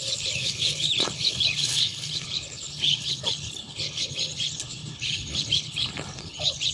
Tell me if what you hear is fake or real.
fake